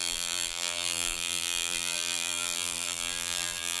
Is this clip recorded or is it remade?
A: remade